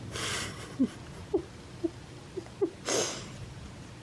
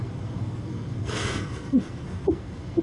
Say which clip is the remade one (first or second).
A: second